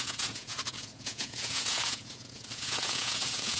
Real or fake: fake